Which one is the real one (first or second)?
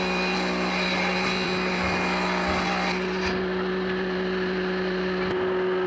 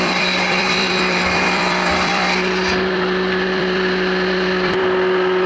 first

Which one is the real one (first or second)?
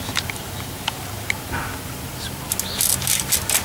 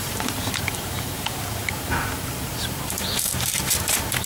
first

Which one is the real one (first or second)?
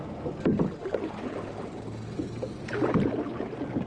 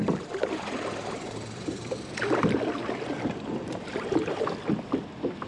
first